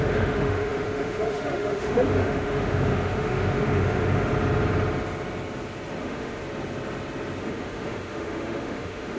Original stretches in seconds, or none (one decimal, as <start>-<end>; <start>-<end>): 4.3-6.0; 6.4-7.4